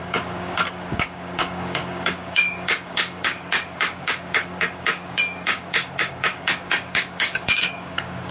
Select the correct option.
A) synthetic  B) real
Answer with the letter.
A